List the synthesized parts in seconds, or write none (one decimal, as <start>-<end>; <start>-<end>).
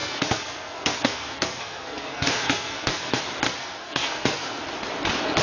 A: 0.0-3.2; 3.6-4.6